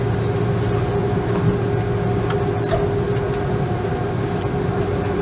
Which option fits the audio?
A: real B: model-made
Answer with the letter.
A